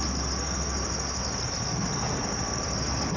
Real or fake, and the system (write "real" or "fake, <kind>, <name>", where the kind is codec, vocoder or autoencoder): real